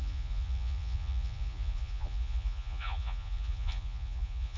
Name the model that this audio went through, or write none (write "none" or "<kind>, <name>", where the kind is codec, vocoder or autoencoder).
vocoder, Vocos